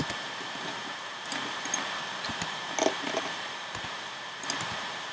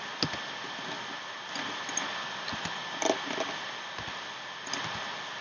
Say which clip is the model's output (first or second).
first